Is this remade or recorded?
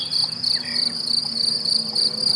recorded